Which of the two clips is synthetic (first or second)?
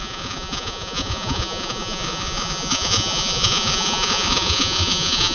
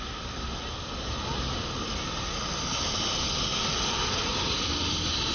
first